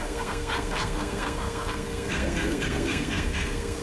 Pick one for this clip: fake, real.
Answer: fake